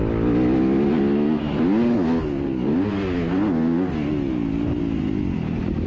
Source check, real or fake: real